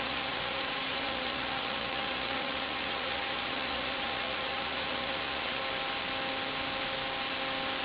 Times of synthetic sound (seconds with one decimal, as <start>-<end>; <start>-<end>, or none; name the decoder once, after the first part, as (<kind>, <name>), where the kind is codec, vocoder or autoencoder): 0.0-5.6 (vocoder, Vocos)